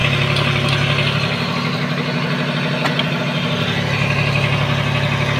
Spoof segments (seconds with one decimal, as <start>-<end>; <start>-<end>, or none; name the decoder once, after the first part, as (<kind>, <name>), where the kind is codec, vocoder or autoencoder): none